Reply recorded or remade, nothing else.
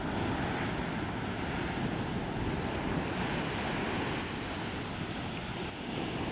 recorded